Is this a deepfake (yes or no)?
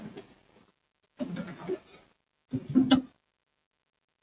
no